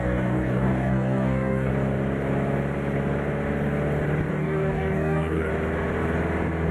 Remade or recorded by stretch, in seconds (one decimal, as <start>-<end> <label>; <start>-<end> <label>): 0.0-1.7 remade; 1.7-4.3 recorded; 4.3-5.5 remade; 5.5-6.7 recorded